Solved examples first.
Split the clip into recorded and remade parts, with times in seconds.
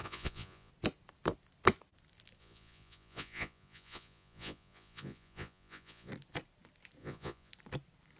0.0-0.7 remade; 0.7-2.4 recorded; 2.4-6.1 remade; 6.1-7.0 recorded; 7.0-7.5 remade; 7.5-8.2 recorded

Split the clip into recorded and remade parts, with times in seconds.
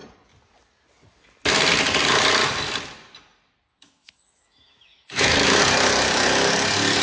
0.0-3.7 recorded; 3.7-5.6 remade; 5.6-7.0 recorded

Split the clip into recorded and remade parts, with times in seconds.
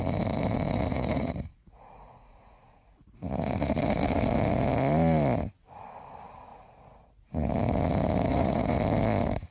0.0-0.9 recorded; 0.9-3.8 remade; 3.8-6.5 recorded; 6.5-7.5 remade; 7.5-8.3 recorded; 8.3-8.8 remade; 8.8-9.5 recorded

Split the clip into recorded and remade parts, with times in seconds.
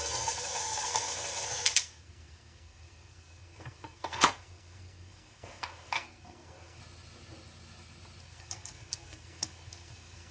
0.0-6.8 remade; 6.8-8.2 recorded; 8.2-10.3 remade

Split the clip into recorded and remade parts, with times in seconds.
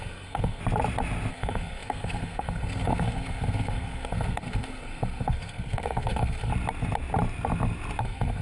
0.0-0.6 remade; 0.6-1.3 recorded; 1.3-6.5 remade; 6.5-8.0 recorded; 8.0-8.4 remade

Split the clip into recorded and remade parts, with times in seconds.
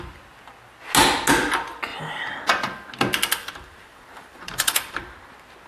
0.0-1.9 recorded; 1.9-2.6 remade; 2.6-3.4 recorded; 3.4-5.3 remade; 5.3-5.7 recorded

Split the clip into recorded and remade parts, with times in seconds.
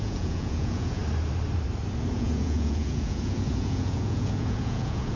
0.0-1.0 remade; 1.0-2.1 recorded; 2.1-5.2 remade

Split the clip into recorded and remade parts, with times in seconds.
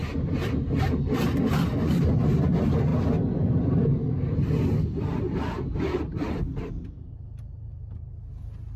0.0-8.8 recorded